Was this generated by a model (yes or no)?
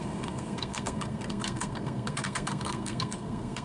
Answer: yes